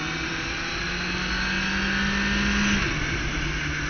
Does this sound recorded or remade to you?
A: recorded